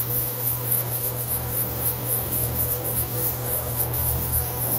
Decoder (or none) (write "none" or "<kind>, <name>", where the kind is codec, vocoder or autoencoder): codec, DAC